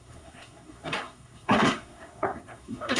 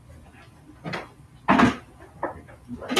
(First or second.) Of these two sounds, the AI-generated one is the first